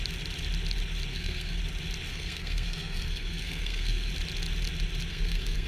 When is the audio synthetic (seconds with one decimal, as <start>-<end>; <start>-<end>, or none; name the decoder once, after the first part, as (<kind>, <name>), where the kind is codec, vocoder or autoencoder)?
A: 1.1-1.6 (codec, SNAC); 2.1-4.1; 5.1-5.7